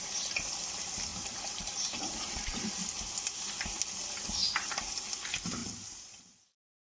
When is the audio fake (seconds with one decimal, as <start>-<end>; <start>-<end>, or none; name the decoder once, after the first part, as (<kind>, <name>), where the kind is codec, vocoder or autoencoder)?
1.1-2.7 (vocoder, BigVGAN v2); 5.6-6.2